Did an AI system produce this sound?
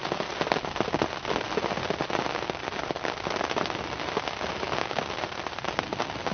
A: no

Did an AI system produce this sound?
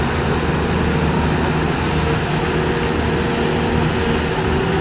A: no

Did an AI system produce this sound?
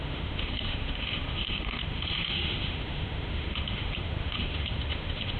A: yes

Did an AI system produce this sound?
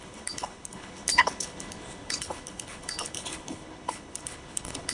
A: yes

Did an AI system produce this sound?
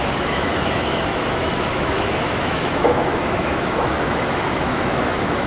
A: yes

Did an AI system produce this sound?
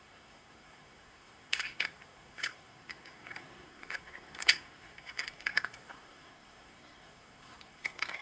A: yes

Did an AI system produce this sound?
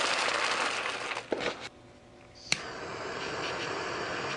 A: no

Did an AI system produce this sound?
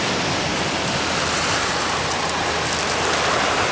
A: no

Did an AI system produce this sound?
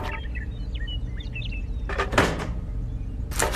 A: no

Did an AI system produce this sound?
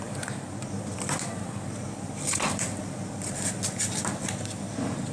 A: yes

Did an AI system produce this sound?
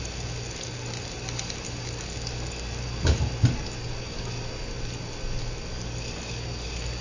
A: no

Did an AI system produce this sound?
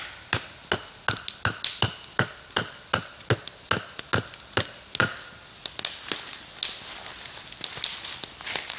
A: no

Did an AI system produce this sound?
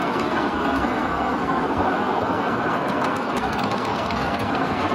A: yes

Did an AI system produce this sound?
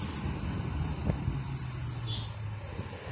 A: no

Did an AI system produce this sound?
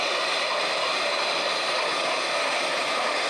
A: no